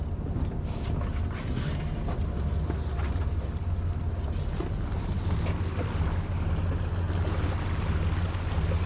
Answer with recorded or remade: recorded